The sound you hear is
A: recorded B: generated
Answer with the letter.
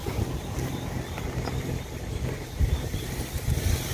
A